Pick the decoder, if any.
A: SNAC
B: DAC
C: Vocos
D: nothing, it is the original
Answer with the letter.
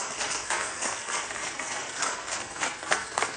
A